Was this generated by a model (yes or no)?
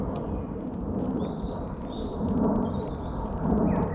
no